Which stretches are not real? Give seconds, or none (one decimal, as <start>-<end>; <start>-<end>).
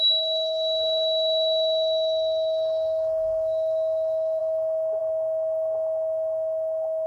0.0-7.1